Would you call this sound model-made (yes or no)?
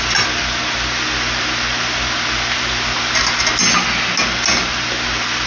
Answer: no